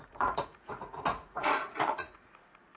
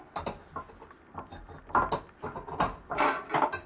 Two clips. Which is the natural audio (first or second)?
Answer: second